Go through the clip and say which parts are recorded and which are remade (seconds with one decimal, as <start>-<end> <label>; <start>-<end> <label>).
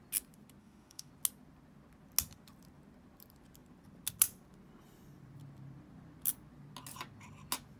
0.0-0.6 recorded; 0.6-1.1 remade; 1.1-7.8 recorded